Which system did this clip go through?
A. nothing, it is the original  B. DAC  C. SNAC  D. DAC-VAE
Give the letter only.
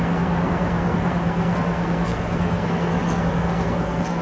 C